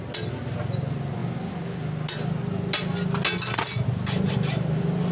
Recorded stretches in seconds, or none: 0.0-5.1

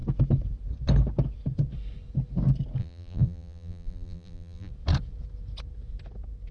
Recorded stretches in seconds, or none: 0.0-2.8; 4.7-6.5